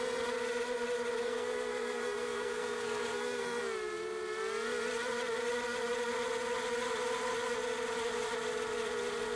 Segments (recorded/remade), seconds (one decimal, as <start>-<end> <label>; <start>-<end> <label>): 0.0-1.2 recorded; 1.2-3.6 remade; 3.6-9.4 recorded